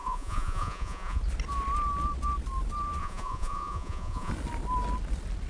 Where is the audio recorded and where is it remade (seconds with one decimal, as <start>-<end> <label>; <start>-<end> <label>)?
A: 0.0-1.2 remade; 1.2-3.0 recorded; 3.0-4.3 remade; 4.3-5.5 recorded